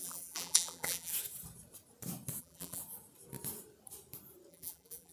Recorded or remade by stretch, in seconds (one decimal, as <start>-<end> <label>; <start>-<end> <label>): 0.0-1.1 remade; 1.1-2.4 recorded; 2.4-2.8 remade; 2.8-4.5 recorded; 4.5-5.1 remade